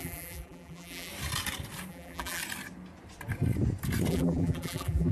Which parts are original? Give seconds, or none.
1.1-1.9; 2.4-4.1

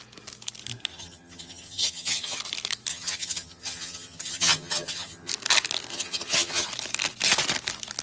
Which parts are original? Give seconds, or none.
0.0-0.9; 2.4-2.9; 5.3-5.9; 6.7-8.0

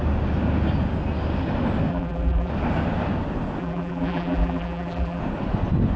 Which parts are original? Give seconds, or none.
0.0-1.9; 2.5-3.6; 5.2-6.0